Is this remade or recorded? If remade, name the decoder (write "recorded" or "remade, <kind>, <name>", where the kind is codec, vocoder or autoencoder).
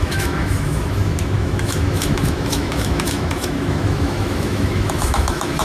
remade, autoencoder, DAC-VAE